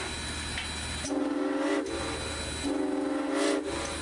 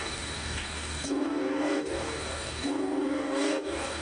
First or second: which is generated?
second